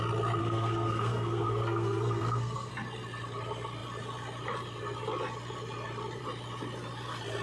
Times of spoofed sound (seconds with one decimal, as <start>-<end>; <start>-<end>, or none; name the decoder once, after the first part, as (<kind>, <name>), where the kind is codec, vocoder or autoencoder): 0.4-2.7 (codec, SNAC)